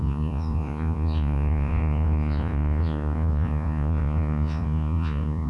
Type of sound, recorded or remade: remade